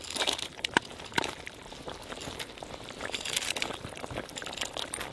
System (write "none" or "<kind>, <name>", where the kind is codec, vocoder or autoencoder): vocoder, BigVGAN v2